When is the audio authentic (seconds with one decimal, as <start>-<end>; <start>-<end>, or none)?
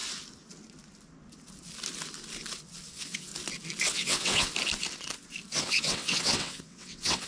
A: 0.0-2.9; 3.3-3.9; 4.5-5.6